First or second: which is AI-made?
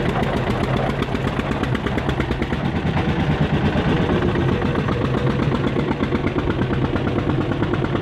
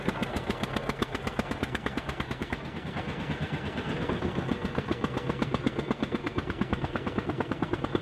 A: second